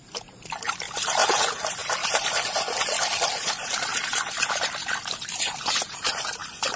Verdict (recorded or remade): remade